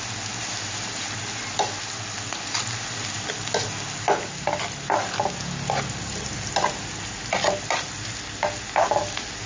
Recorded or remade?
recorded